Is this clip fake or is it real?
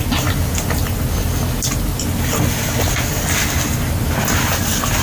real